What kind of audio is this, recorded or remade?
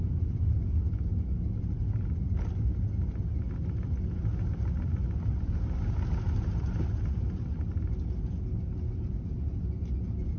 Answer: recorded